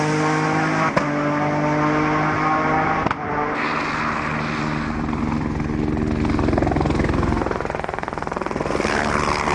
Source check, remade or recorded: recorded